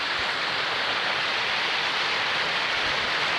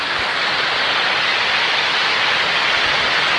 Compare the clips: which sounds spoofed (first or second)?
first